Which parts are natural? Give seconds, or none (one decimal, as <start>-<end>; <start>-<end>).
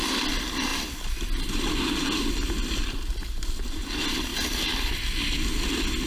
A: 0.0-4.3; 4.9-6.1